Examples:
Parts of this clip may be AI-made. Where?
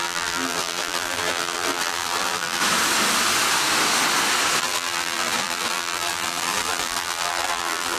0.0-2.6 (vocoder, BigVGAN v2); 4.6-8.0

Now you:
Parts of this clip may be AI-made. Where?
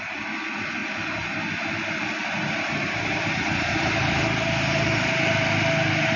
0.8-1.7 (vocoder, BigVGAN v2); 2.4-5.1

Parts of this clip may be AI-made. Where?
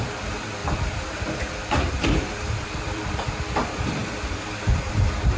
0.0-4.0 (vocoder, BigVGAN v2)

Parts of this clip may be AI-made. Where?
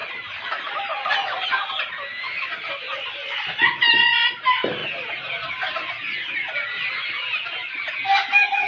none